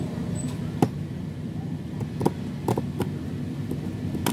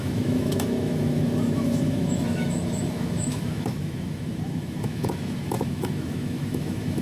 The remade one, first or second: second